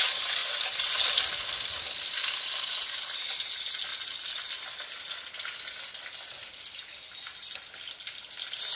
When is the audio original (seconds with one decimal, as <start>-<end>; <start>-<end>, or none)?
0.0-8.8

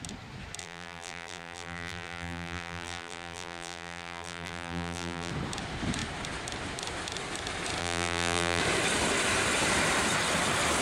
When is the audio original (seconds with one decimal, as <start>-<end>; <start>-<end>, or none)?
0.0-0.6; 5.3-7.8; 8.6-10.8

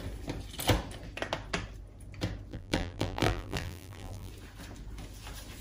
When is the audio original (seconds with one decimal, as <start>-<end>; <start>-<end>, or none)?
0.0-2.5; 4.3-5.6

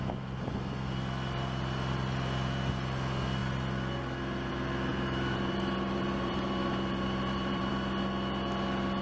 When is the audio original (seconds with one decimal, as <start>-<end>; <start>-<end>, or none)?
0.0-4.9; 7.7-9.0